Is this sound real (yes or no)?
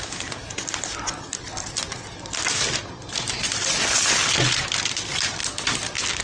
yes